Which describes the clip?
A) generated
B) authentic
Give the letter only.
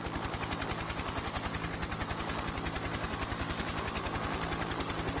B